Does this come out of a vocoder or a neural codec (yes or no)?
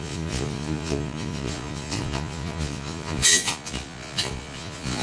yes